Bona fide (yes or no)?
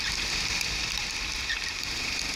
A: yes